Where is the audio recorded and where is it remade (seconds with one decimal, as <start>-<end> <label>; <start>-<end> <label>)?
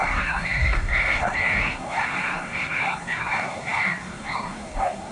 0.0-5.1 remade